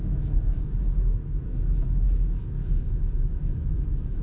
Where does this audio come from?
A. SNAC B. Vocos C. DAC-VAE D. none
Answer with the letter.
C